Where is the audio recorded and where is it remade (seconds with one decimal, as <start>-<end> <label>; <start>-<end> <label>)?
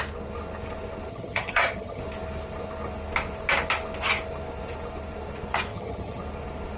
0.0-1.1 recorded; 1.1-2.0 remade; 2.0-5.7 recorded; 5.7-6.2 remade; 6.2-6.8 recorded